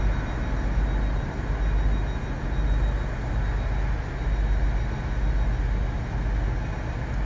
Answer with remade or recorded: recorded